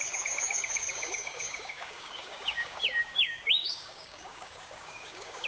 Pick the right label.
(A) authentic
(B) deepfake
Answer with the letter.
B